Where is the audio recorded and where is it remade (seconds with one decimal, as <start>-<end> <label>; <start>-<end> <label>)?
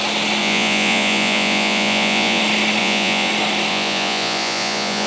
0.0-0.4 recorded; 0.4-2.4 remade; 2.4-2.8 recorded; 2.8-3.3 remade; 3.3-3.7 recorded; 3.7-5.1 remade